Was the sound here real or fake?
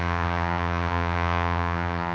fake